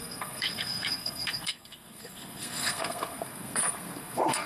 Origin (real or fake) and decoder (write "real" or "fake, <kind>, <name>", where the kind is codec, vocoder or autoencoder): fake, codec, SNAC